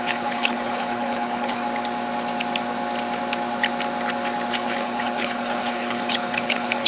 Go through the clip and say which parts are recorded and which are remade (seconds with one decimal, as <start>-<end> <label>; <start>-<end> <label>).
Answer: 0.0-1.6 remade; 1.6-4.5 recorded; 4.5-6.9 remade